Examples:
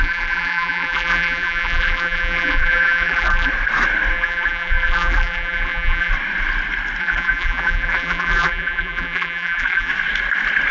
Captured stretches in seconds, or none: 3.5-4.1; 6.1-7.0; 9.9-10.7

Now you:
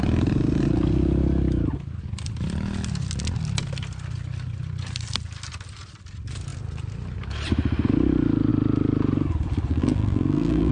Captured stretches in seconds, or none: 0.0-9.7

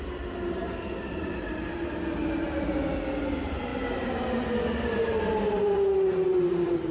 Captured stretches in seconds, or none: 0.0-6.9